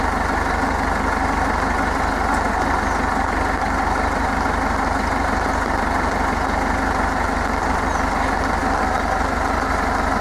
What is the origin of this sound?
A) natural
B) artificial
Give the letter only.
A